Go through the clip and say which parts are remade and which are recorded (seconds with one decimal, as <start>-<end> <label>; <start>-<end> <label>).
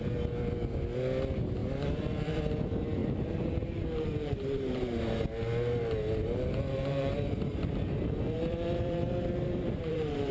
0.0-1.6 recorded; 1.6-2.4 remade; 2.4-3.0 recorded; 3.0-5.0 remade; 5.0-6.2 recorded; 6.2-10.3 remade